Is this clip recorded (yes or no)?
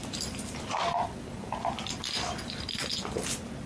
yes